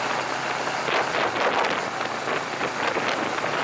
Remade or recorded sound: recorded